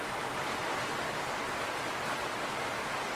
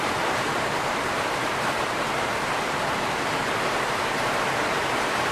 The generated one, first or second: second